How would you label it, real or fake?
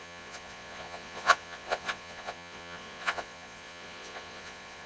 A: fake